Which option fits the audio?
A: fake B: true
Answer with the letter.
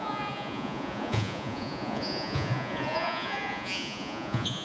A